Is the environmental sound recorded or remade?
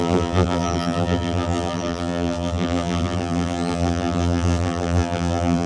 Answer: remade